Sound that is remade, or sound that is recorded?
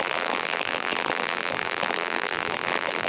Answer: remade